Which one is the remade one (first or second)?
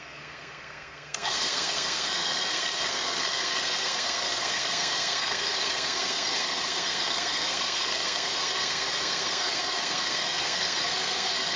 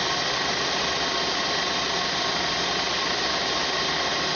first